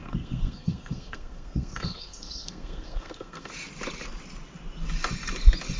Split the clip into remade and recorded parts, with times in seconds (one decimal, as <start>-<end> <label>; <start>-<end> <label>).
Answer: 0.0-3.5 remade; 3.5-5.8 recorded

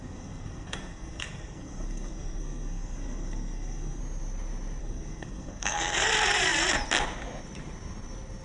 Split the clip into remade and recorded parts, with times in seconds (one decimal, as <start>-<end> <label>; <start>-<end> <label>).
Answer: 0.0-4.0 remade; 4.0-4.8 recorded; 4.8-6.1 remade; 6.1-8.4 recorded